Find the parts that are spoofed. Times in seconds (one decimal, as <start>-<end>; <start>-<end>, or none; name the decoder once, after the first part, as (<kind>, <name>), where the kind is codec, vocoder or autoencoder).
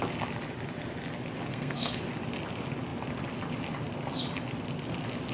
1.5-2.0 (codec, SNAC)